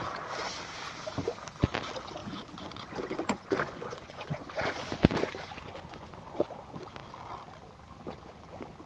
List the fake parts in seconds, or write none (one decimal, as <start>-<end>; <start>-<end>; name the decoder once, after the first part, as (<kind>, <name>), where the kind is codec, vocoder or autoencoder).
2.2-6.5 (vocoder, Vocos)